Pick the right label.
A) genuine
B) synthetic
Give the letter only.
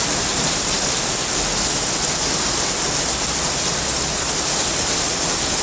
A